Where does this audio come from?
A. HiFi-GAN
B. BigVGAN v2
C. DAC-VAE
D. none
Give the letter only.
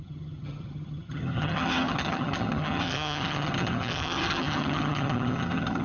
A